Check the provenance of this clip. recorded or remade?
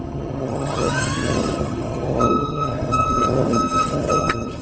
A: remade